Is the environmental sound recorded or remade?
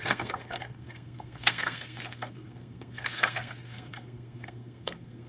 remade